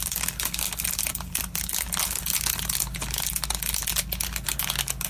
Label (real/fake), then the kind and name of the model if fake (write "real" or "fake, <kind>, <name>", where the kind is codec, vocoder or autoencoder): real